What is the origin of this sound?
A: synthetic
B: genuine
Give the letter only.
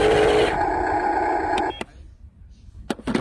B